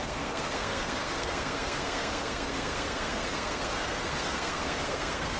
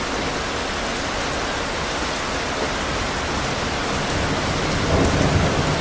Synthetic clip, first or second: first